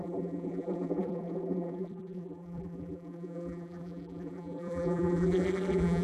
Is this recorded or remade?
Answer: remade